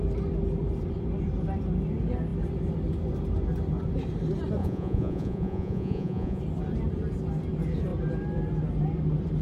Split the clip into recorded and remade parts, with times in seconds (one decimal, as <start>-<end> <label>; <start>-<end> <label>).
0.0-4.6 recorded; 4.6-6.4 remade; 6.4-9.4 recorded